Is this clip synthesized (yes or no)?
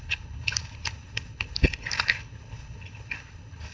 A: yes